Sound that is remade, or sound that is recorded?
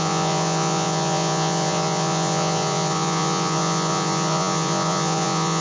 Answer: remade